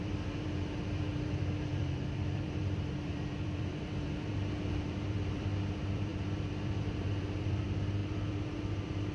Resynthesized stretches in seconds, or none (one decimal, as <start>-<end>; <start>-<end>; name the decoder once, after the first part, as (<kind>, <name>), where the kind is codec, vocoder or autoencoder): 0.0-9.1 (vocoder, BigVGAN v2)